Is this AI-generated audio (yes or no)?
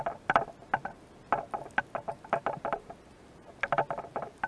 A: no